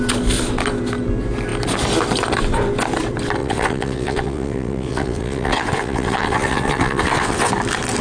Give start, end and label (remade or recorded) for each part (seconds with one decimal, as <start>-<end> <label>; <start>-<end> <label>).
0.0-3.4 recorded; 3.4-7.5 remade; 7.5-8.0 recorded